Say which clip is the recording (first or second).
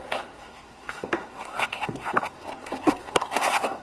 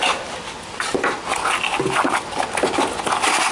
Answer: second